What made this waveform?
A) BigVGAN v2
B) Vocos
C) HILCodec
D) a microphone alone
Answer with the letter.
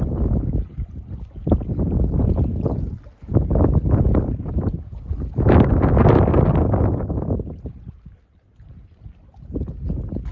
D